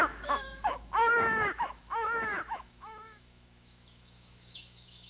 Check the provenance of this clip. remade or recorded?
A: remade